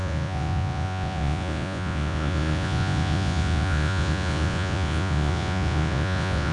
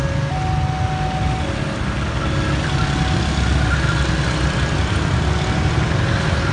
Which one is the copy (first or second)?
first